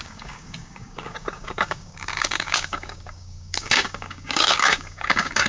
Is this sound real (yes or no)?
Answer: no